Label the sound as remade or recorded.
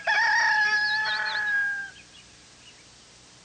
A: recorded